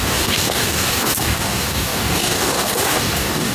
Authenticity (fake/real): fake